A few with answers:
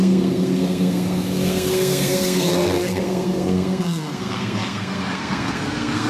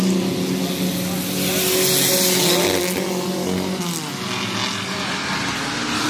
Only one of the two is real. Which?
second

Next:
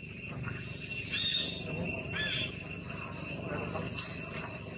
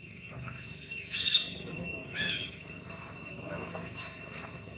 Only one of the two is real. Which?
first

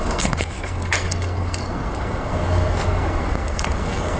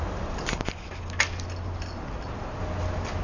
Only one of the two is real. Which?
second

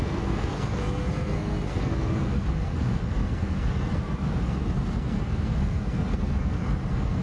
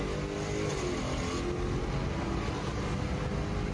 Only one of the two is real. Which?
second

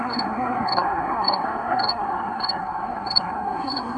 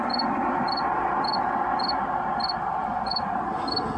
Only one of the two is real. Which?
second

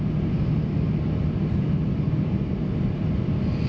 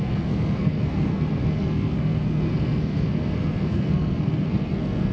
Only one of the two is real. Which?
first